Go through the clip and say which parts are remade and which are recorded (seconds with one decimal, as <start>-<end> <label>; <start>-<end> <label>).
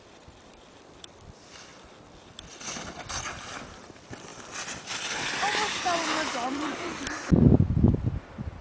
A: 0.0-8.6 recorded